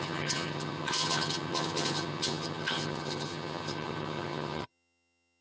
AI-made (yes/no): yes